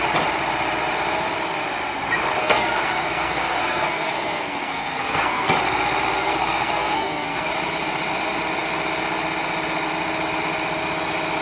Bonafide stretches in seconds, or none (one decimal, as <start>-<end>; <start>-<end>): 0.0-2.4; 5.5-6.2; 7.5-11.4